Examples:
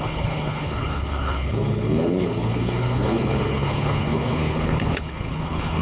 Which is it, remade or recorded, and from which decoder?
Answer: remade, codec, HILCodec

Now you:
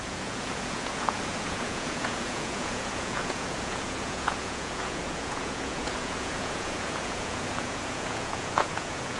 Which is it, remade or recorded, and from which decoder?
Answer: remade, vocoder, Vocos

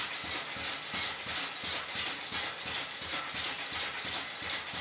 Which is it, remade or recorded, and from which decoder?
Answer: recorded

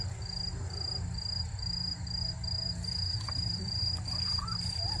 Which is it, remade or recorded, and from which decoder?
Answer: recorded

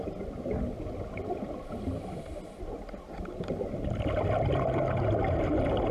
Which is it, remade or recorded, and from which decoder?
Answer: recorded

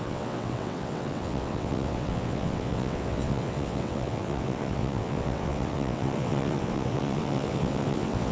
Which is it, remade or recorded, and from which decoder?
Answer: remade, vocoder, WaveNeXt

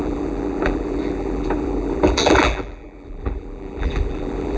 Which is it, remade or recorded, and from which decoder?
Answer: remade, vocoder, BigVGAN v2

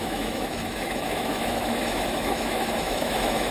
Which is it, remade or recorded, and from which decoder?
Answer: remade, autoencoder, DAC-VAE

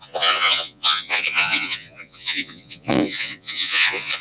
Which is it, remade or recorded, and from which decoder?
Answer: remade, vocoder, Vocos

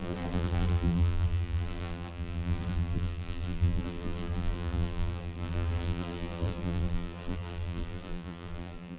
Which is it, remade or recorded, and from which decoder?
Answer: remade, vocoder, BigVGAN v2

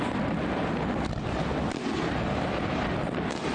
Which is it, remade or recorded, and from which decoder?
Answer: recorded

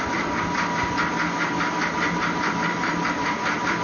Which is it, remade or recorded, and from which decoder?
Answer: recorded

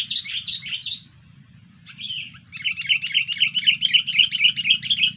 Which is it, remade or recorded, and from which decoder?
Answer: recorded